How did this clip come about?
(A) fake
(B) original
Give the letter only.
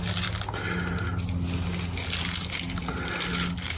B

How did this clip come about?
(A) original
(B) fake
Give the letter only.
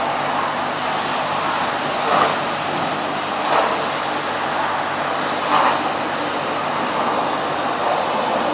A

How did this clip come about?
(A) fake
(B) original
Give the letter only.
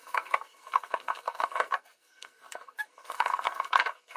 A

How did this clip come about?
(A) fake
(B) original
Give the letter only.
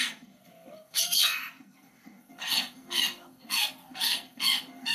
A